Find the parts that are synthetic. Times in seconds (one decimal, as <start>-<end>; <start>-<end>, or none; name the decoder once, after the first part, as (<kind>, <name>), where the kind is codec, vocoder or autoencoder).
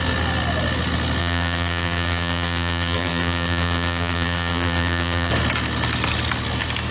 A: 1.2-5.3 (vocoder, BigVGAN v2)